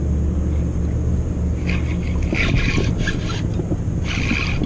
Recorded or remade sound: recorded